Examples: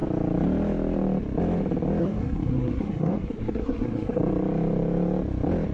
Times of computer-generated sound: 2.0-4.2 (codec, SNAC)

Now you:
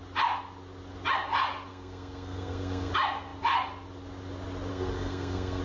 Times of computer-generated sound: 1.7-2.9 (codec, SNAC); 4.7-5.6

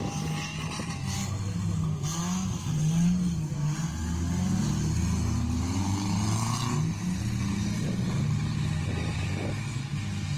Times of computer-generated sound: none